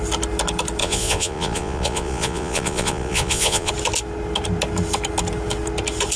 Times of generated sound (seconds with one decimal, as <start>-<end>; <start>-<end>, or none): 0.8-3.7